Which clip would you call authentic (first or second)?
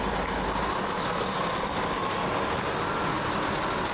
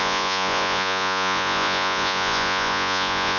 first